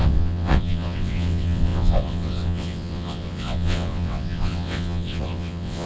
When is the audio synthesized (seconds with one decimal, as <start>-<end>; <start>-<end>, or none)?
0.0-5.9